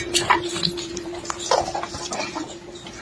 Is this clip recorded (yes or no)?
yes